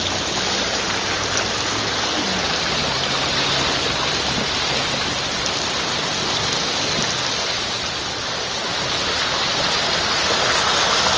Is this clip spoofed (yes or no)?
no